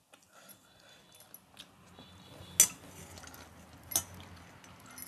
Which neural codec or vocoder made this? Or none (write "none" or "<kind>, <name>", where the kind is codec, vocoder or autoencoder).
none